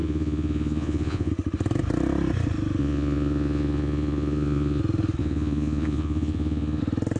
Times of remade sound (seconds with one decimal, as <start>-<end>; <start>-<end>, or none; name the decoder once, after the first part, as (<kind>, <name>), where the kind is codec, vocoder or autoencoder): 0.0-1.3 (vocoder, Vocos); 2.8-4.8; 5.2-6.8